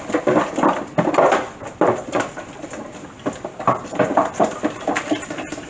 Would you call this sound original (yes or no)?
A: yes